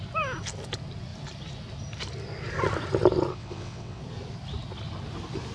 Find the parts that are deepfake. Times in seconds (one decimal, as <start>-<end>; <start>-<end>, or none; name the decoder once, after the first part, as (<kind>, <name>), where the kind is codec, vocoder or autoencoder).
3.3-4.0 (vocoder, WaveNeXt)